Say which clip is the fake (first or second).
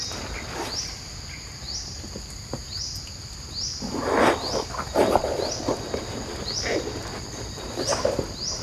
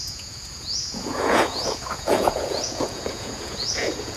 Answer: second